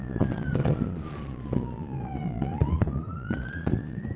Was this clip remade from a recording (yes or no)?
yes